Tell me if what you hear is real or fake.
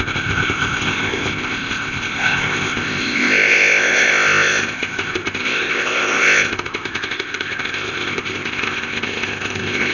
fake